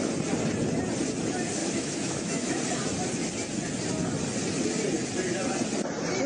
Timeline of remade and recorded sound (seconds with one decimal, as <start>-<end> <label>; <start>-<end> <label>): 0.0-1.6 recorded; 1.6-2.6 remade; 2.6-6.3 recorded

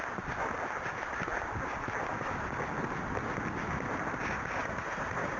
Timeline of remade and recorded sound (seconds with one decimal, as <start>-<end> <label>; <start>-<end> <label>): 0.0-4.6 recorded; 4.6-5.4 remade